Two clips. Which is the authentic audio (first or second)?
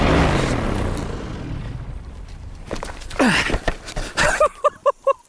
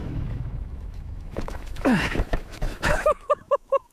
first